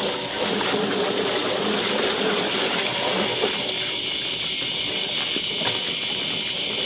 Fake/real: real